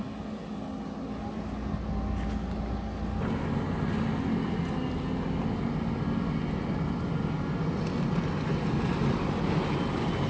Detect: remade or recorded recorded